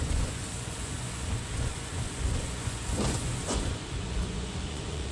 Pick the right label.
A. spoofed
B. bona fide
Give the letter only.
A